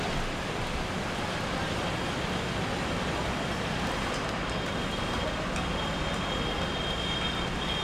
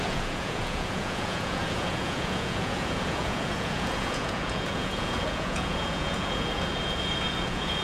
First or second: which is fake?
second